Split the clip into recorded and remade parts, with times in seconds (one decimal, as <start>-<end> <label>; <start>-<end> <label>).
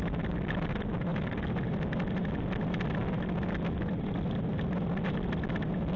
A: 0.0-6.0 recorded